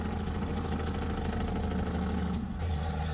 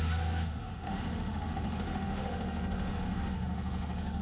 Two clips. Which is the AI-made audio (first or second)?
second